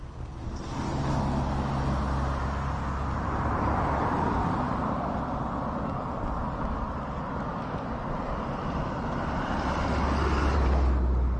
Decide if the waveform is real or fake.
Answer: real